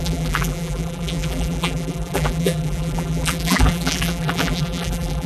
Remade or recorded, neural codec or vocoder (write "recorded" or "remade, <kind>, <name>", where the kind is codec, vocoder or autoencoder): remade, vocoder, BigVGAN v2